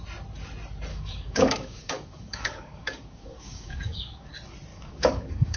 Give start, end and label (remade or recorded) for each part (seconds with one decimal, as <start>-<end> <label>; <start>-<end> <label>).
0.0-0.9 recorded; 0.9-4.3 remade; 4.3-4.7 recorded; 4.7-5.6 remade